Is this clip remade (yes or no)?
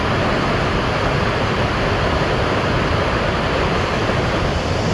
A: no